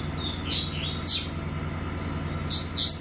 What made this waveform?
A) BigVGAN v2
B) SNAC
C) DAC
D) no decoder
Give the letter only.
D